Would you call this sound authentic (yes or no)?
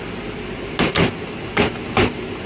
yes